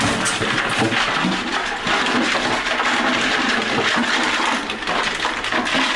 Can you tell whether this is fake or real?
real